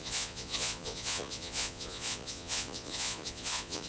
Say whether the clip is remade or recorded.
remade